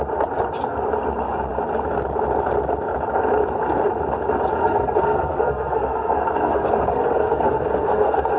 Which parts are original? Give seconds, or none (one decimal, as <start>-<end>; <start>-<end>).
0.0-4.6

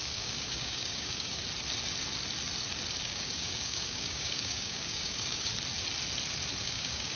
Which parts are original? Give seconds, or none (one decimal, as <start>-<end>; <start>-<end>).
1.4-3.0; 5.5-6.6

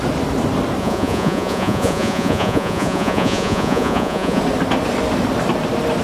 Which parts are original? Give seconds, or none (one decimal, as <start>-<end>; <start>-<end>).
0.0-0.8; 4.4-6.0

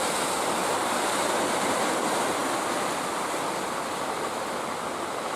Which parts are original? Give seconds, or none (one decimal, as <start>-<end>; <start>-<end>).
0.0-5.4

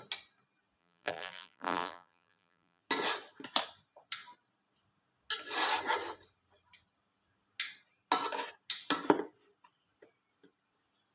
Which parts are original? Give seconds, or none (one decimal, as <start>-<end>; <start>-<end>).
0.0-0.8; 2.8-11.1